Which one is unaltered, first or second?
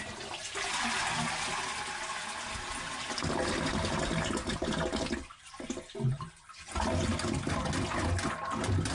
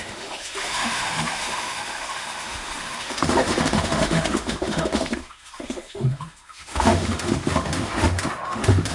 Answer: first